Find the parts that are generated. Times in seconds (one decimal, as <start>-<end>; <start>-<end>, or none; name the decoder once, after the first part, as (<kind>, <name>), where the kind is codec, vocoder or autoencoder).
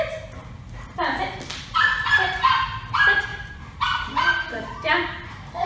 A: 0.4-1.2 (vocoder, BigVGAN v2); 3.3-5.7